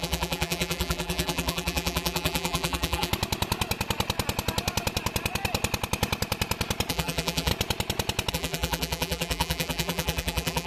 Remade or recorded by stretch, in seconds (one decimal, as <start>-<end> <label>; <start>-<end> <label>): 0.0-3.1 remade; 3.1-6.9 recorded; 6.9-7.5 remade; 7.5-8.3 recorded; 8.3-10.7 remade